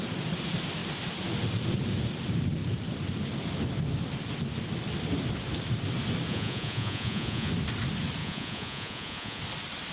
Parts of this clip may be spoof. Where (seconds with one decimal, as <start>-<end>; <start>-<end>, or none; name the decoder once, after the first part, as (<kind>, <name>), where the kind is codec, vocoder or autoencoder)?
6.3-7.5 (vocoder, Vocos); 8.2-9.4